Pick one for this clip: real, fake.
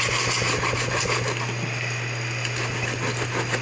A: real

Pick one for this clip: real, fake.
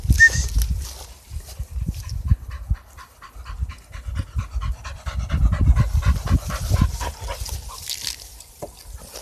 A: real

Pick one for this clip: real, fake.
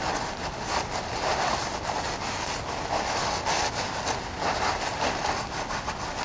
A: real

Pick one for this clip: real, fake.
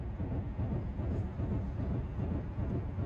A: real